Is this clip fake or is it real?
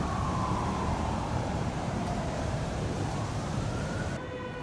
fake